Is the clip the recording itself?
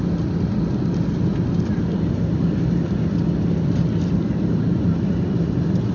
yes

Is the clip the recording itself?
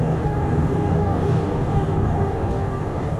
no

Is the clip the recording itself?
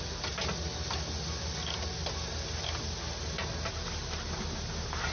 yes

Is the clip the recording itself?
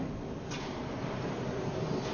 yes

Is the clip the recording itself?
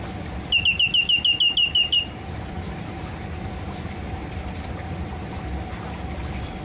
yes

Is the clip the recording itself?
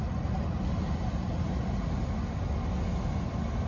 yes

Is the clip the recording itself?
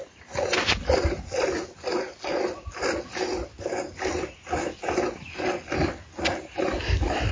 yes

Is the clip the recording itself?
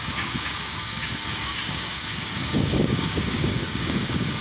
no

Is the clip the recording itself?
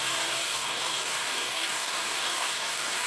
no